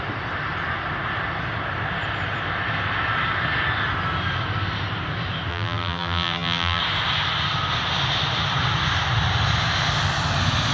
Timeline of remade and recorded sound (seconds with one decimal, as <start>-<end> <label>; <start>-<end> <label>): 0.0-5.5 recorded; 5.5-6.8 remade; 6.8-10.7 recorded